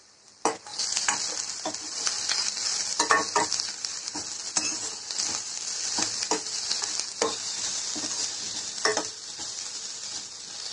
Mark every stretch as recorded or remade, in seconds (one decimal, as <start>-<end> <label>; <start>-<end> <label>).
0.0-10.7 recorded